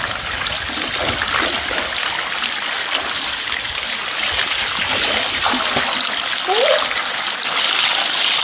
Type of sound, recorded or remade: recorded